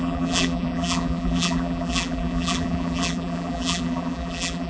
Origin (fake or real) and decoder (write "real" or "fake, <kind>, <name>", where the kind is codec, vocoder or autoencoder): fake, vocoder, BigVGAN v2